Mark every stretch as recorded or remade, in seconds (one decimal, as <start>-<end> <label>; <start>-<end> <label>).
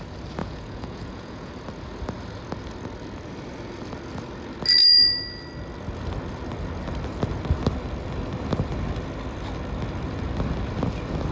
0.0-0.4 recorded; 0.4-1.5 remade; 1.5-11.3 recorded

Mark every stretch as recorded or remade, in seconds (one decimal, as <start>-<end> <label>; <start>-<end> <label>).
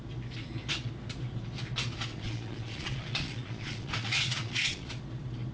0.0-2.1 recorded; 2.1-4.9 remade; 4.9-5.5 recorded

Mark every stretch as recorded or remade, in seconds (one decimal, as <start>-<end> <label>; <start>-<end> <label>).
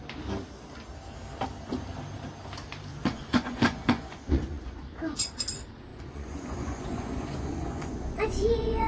0.0-2.9 recorded; 2.9-5.4 remade; 5.4-5.9 recorded; 5.9-8.9 remade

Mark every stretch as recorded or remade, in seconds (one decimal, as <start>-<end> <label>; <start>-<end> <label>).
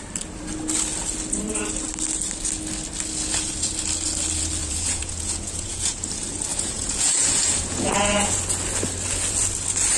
0.0-4.6 recorded; 4.6-6.1 remade; 6.1-6.5 recorded; 6.5-8.4 remade; 8.4-10.0 recorded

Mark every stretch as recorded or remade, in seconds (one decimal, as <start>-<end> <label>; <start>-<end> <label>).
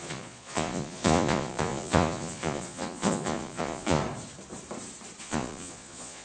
0.0-4.0 remade; 4.0-5.2 recorded; 5.2-6.2 remade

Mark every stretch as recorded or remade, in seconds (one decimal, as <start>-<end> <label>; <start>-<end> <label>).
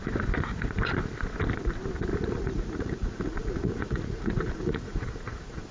0.0-2.1 recorded; 2.1-5.7 remade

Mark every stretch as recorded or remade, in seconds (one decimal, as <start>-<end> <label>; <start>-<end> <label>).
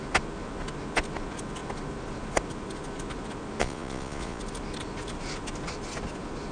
0.0-3.6 recorded; 3.6-4.4 remade; 4.4-6.5 recorded